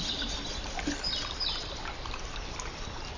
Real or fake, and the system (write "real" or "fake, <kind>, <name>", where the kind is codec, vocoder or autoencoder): real